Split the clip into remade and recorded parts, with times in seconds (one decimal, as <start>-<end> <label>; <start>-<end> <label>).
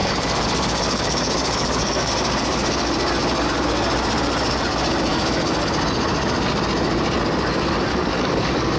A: 0.0-2.1 remade; 2.1-5.1 recorded; 5.1-5.7 remade; 5.7-7.9 recorded; 7.9-8.8 remade